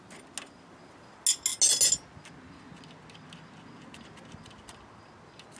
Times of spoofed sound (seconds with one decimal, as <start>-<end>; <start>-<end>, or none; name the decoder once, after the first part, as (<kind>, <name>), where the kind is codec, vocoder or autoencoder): none